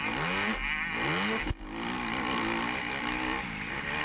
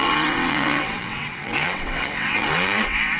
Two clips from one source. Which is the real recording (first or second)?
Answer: first